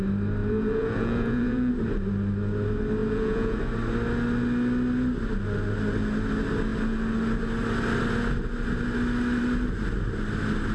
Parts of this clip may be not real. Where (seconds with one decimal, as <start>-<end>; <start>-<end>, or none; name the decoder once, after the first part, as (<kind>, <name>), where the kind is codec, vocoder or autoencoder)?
0.4-1.7 (vocoder, Vocos); 3.0-3.6